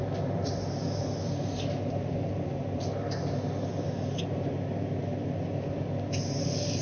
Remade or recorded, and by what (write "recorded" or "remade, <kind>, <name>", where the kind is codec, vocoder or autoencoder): recorded